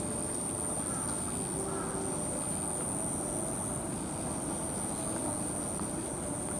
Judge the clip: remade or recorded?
recorded